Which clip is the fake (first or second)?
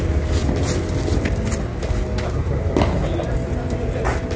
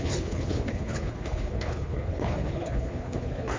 second